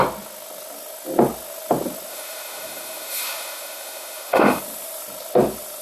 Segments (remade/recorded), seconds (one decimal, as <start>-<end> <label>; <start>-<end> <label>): 0.0-2.1 recorded; 2.1-4.6 remade; 4.6-5.8 recorded